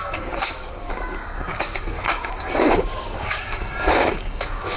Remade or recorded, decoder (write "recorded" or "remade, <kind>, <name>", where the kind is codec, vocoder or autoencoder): remade, codec, DAC